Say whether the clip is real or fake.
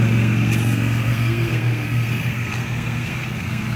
fake